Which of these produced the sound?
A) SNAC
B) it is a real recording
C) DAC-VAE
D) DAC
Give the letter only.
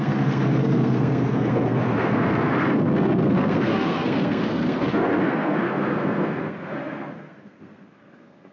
A